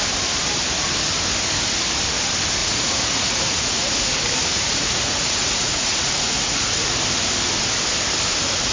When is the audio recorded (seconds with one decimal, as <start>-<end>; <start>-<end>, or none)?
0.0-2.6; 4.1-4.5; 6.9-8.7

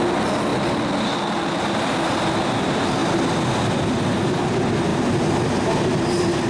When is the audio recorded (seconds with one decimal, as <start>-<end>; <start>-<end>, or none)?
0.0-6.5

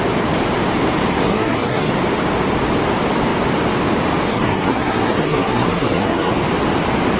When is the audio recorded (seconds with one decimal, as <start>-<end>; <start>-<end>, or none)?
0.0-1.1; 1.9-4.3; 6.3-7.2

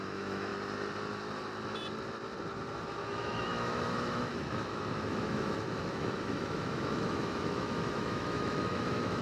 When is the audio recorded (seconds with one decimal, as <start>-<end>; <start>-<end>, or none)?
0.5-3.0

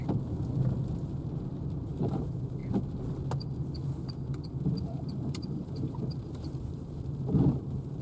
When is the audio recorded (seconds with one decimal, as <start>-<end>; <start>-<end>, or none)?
0.0-1.5; 2.6-4.8

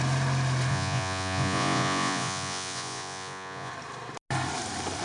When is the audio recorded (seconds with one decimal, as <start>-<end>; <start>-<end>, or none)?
0.0-0.7; 3.7-5.0